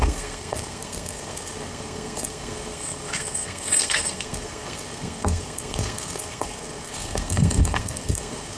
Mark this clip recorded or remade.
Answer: remade